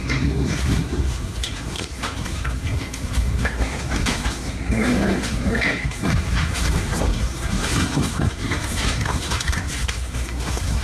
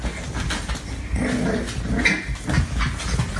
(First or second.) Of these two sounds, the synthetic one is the first